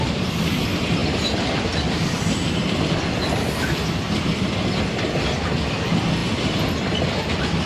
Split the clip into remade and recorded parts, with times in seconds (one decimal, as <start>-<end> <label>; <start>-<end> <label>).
0.0-7.7 recorded